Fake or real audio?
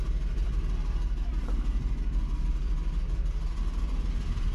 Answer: real